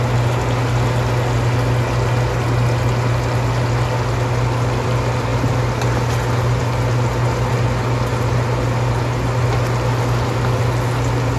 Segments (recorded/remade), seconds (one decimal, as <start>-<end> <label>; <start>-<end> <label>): 0.0-5.3 recorded; 5.3-6.1 remade; 6.1-11.4 recorded